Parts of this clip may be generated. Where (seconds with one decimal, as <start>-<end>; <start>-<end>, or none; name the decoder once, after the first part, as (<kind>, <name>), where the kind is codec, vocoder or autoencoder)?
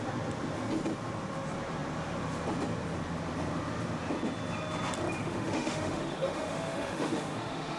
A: 5.2-7.8 (autoencoder, DAC-VAE)